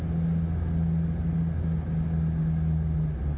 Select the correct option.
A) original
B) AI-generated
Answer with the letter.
A